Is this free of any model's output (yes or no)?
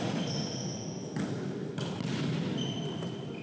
yes